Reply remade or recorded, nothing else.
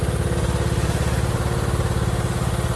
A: recorded